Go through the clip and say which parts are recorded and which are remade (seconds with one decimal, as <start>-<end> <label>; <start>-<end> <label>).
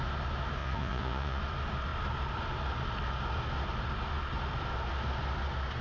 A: 0.0-0.6 recorded; 0.6-1.4 remade; 1.4-5.8 recorded